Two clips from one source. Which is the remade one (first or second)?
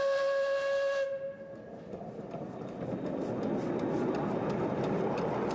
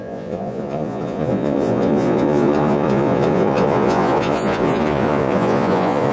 second